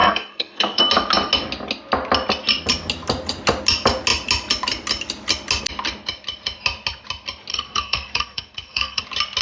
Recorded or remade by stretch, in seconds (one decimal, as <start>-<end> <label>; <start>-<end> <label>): 0.0-0.8 remade; 0.8-7.5 recorded; 7.5-9.0 remade; 9.0-9.4 recorded